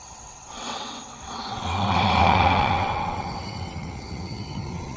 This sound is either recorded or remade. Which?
remade